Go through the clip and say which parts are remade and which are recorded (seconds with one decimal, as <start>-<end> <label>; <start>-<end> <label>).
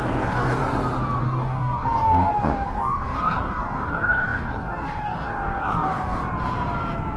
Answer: 0.0-0.6 remade; 0.6-1.2 recorded; 1.2-6.2 remade; 6.2-7.2 recorded